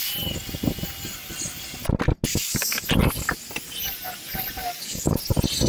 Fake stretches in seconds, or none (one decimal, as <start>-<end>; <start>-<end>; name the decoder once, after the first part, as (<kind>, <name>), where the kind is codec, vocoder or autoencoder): 2.3-2.9 (codec, DAC); 4.6-5.2